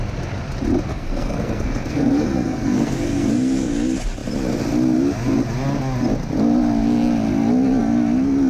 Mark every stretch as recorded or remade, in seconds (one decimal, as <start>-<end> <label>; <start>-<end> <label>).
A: 0.0-0.9 recorded; 0.9-3.7 remade; 3.7-8.5 recorded